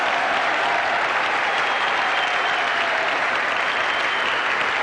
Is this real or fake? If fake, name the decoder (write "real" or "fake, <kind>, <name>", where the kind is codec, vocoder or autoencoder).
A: real